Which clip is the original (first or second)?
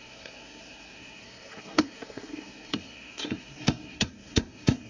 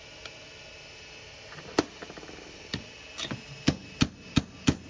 second